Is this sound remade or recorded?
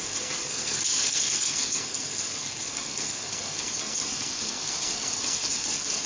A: remade